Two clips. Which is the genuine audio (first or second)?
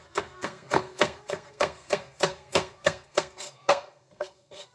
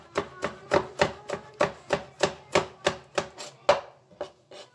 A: second